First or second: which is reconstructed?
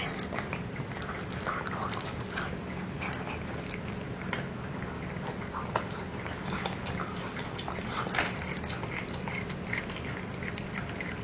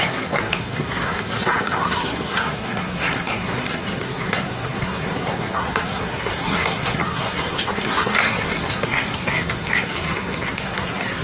second